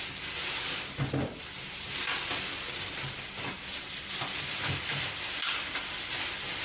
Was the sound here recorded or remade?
recorded